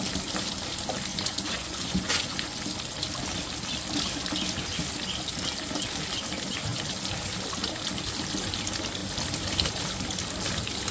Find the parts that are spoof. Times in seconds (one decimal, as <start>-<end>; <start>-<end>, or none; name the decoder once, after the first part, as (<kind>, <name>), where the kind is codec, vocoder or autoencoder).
1.1-2.6 (vocoder, Vocos)